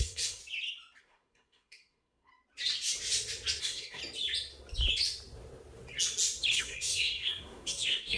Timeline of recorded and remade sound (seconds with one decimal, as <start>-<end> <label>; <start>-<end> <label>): 0.0-0.4 remade; 0.4-1.0 recorded; 1.0-2.3 remade; 2.3-3.6 recorded; 3.6-4.0 remade; 4.0-6.5 recorded; 6.5-8.2 remade